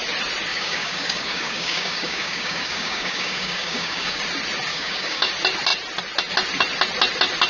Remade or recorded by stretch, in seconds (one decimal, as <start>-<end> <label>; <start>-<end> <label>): 0.0-0.5 recorded; 0.5-4.2 remade; 4.2-4.7 recorded; 4.7-5.3 remade; 5.3-7.5 recorded